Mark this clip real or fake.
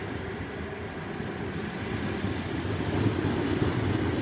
real